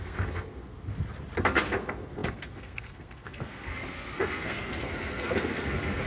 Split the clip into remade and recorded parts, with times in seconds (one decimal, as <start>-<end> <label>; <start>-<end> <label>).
0.0-0.9 remade; 0.9-1.4 recorded; 1.4-6.1 remade

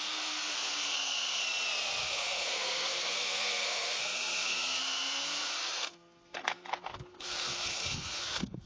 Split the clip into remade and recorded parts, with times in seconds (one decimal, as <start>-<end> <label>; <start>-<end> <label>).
0.0-1.4 remade; 1.4-2.0 recorded; 2.0-8.7 remade

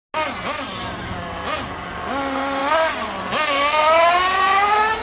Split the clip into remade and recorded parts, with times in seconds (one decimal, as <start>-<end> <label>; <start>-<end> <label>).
0.0-5.0 recorded